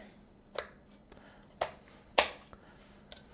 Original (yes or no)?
yes